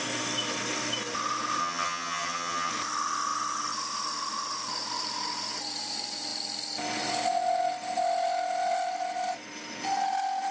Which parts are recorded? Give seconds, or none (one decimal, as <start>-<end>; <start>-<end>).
0.0-1.6; 2.7-10.5

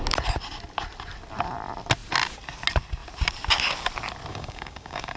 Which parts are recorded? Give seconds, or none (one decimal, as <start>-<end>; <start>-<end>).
0.0-4.3